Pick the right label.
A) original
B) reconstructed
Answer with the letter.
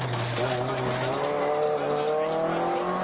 A